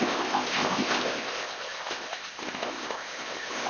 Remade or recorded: remade